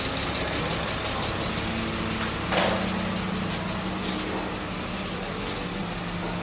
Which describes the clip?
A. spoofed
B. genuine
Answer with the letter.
B